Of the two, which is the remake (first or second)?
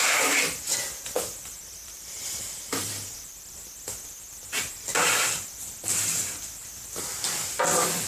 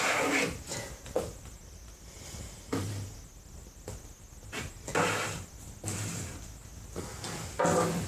first